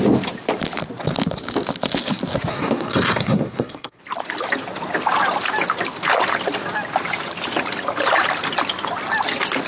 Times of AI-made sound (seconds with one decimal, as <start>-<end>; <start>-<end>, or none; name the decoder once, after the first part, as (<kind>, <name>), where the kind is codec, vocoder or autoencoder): 2.5-4.0 (codec, SNAC)